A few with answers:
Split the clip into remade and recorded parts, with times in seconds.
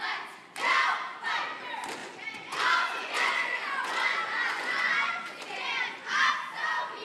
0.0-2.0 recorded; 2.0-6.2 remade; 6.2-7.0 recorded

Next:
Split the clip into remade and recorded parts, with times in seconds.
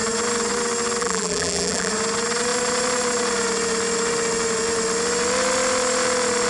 0.0-1.0 recorded; 1.0-1.9 remade; 1.9-6.5 recorded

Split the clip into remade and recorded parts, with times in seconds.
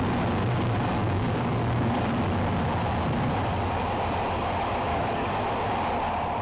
0.0-1.0 recorded; 1.0-2.2 remade; 2.2-4.9 recorded; 4.9-5.4 remade; 5.4-6.4 recorded